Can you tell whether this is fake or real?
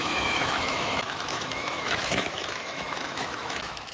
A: fake